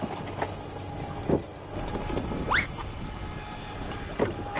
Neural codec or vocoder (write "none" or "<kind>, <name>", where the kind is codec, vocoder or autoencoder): none